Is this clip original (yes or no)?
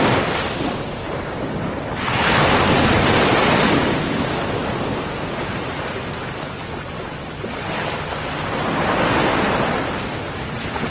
yes